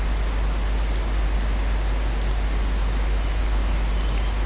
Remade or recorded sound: recorded